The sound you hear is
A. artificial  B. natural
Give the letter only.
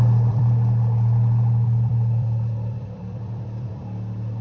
A